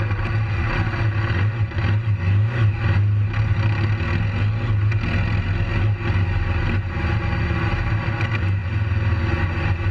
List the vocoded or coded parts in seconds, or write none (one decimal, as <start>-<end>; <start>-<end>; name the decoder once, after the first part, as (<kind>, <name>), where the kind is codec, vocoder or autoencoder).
none